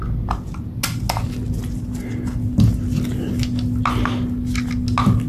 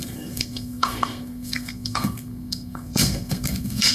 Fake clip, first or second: second